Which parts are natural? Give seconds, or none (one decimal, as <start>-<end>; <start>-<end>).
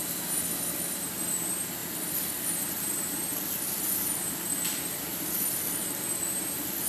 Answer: 0.0-0.5; 1.2-1.8; 5.9-6.9